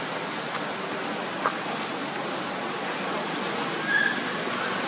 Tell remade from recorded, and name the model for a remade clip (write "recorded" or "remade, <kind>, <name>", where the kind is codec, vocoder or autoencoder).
recorded